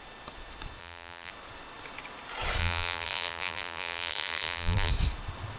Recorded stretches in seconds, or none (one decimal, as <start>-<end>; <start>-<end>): 0.0-0.8; 1.3-2.6; 4.9-5.6